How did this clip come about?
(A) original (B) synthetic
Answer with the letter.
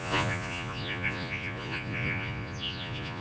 B